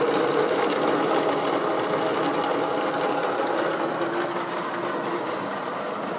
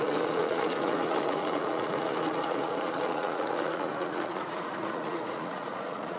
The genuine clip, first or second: first